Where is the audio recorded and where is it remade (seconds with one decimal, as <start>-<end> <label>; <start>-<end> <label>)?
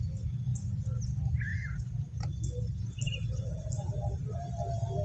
0.0-5.0 recorded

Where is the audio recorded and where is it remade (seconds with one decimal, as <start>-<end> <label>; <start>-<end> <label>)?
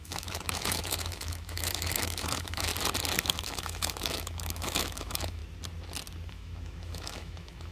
0.0-2.7 remade; 2.7-3.2 recorded; 3.2-5.4 remade; 5.4-6.3 recorded; 6.3-7.7 remade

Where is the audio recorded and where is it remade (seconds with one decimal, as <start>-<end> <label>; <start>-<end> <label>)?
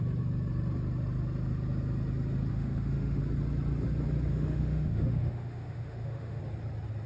0.0-2.5 recorded; 2.5-3.2 remade; 3.2-4.3 recorded; 4.3-6.4 remade; 6.4-7.1 recorded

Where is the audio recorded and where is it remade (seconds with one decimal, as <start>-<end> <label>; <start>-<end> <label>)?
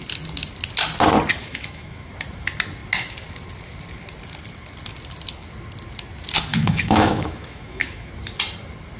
0.0-1.4 recorded; 1.4-2.1 remade; 2.1-6.5 recorded; 6.5-8.1 remade; 8.1-9.0 recorded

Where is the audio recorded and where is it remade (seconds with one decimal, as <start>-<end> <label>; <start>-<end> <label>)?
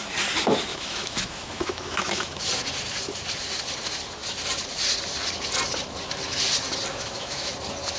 0.0-0.7 recorded; 0.7-2.4 remade; 2.4-6.9 recorded; 6.9-7.5 remade; 7.5-8.0 recorded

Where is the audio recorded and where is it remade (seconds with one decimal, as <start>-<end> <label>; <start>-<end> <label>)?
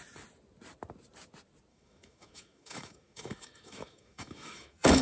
0.0-1.7 recorded; 1.7-5.0 remade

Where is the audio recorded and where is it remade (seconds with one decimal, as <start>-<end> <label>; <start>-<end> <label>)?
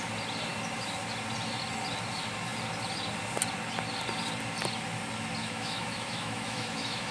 0.0-5.4 recorded; 5.4-7.1 remade